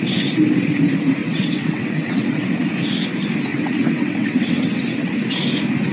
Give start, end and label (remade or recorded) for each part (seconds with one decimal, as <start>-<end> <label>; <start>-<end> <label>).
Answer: 0.0-1.2 recorded; 1.2-2.4 remade; 2.4-3.5 recorded; 3.5-5.1 remade; 5.1-5.9 recorded